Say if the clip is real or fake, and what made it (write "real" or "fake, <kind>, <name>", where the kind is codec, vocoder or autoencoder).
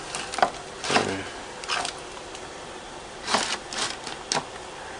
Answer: real